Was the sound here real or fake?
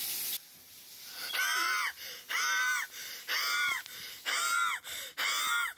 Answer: real